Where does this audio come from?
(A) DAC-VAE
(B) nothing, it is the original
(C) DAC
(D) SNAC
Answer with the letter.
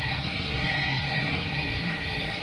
D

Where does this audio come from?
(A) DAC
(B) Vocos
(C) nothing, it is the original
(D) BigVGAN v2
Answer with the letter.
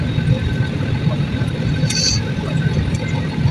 C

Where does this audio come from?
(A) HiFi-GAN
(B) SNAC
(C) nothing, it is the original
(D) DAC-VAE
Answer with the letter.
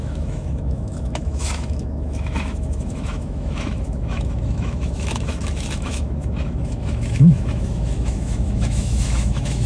D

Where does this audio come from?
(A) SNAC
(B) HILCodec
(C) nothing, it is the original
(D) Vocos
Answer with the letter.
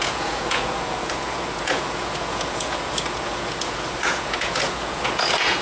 D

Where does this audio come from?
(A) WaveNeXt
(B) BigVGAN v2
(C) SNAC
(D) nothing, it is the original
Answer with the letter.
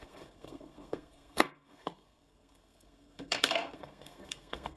C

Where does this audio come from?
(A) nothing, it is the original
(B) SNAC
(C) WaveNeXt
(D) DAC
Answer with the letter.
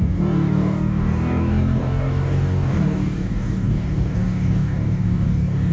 D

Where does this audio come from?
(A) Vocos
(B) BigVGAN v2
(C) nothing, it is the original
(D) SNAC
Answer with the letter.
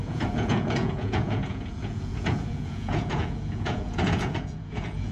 A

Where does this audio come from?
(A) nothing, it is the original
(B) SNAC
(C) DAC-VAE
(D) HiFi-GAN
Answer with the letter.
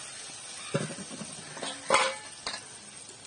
A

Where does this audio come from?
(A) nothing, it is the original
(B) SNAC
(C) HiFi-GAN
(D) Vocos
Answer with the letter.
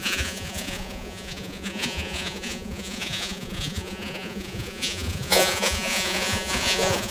D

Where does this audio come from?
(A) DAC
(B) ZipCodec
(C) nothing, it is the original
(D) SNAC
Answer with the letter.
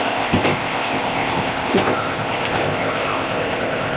B